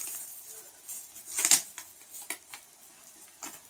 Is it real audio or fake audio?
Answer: real